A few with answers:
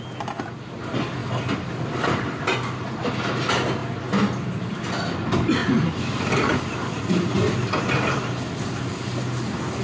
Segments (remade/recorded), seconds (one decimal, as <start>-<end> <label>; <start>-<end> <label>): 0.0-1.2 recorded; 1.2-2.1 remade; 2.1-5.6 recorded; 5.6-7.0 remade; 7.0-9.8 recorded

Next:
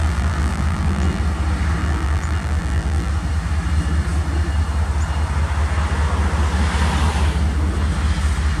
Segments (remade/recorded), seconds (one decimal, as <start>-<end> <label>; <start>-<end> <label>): 0.0-1.2 remade; 1.2-1.8 recorded; 1.8-3.1 remade; 3.1-8.6 recorded

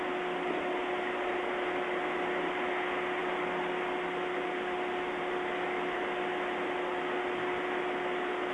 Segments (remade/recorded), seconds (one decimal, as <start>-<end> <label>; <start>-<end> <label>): 0.0-8.5 recorded

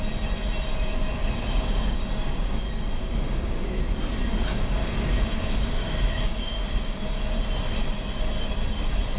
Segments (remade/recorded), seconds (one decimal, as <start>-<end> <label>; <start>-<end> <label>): 0.0-1.2 recorded; 1.2-2.0 remade; 2.0-3.0 recorded; 3.0-3.8 remade; 3.8-4.5 recorded; 4.5-7.2 remade; 7.2-9.2 recorded

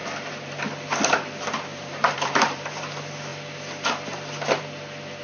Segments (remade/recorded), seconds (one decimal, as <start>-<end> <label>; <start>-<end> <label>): 0.0-0.6 remade; 0.6-1.7 recorded; 1.7-2.8 remade; 2.8-5.2 recorded

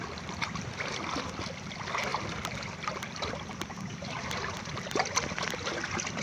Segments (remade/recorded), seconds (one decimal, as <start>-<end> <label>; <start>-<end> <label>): 0.0-6.2 recorded

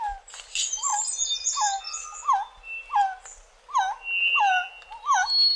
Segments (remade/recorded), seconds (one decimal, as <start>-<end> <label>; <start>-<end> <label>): 0.0-5.6 recorded